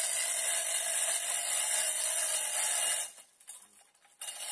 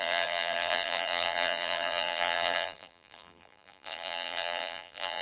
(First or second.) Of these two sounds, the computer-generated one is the second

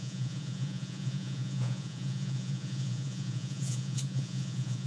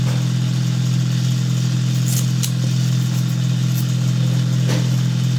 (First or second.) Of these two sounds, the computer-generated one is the first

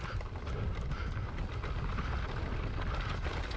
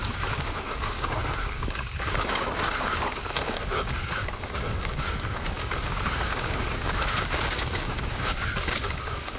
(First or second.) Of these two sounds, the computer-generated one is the second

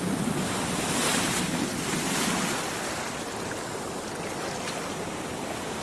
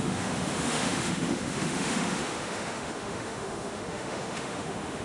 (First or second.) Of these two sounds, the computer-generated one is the second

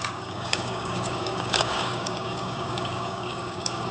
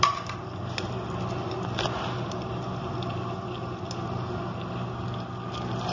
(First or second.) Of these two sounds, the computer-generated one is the first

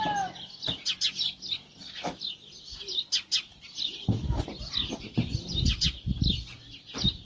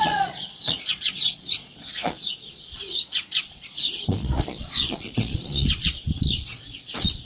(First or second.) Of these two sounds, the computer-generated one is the second